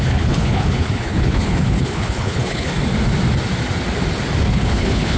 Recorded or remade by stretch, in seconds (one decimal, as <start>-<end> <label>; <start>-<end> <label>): 0.0-2.7 remade; 2.7-4.4 recorded; 4.4-5.2 remade